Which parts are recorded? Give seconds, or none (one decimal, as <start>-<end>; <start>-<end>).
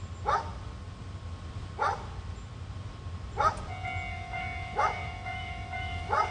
0.0-4.1